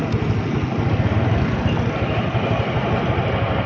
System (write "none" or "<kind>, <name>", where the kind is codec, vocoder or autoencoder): none